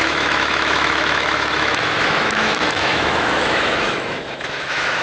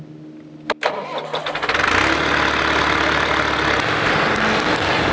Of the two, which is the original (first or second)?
second